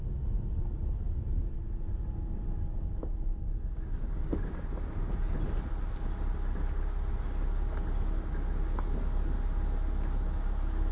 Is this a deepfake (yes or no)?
no